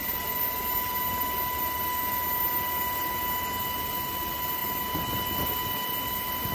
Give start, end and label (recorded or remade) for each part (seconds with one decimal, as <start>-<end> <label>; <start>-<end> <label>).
0.0-6.5 recorded